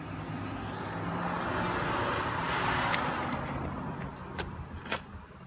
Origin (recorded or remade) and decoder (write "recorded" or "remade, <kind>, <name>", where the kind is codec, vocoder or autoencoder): recorded